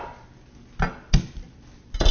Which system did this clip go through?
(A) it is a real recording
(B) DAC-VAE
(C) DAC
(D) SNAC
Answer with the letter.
A